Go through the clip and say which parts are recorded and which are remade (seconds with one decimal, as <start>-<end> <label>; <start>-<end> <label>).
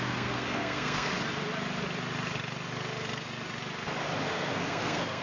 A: 0.0-1.1 remade; 1.1-4.2 recorded; 4.2-5.2 remade